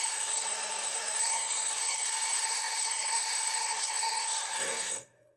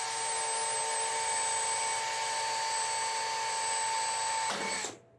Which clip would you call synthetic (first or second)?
first